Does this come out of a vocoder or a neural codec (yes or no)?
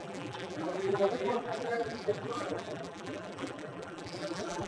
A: yes